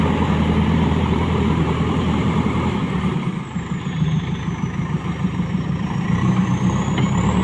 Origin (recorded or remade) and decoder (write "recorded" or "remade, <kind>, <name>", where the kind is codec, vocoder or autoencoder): remade, vocoder, BigVGAN v2